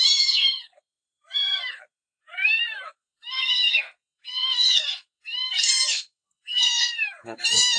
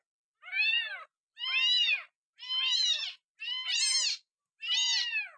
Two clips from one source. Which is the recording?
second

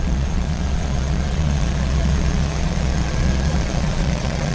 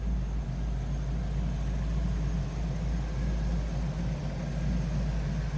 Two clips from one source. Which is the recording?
second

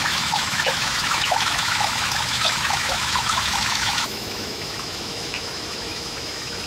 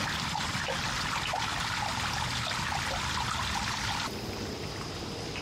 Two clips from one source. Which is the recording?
second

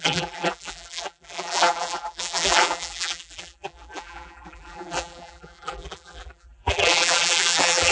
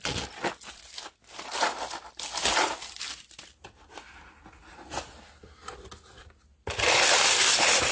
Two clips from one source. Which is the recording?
second